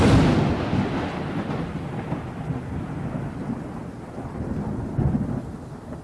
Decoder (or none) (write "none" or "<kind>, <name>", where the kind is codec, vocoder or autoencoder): none